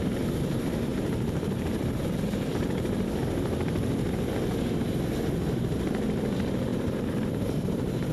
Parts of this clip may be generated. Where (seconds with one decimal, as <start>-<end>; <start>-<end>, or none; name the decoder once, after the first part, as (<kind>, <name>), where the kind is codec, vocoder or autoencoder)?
0.9-2.5 (vocoder, BigVGAN v2); 6.7-8.1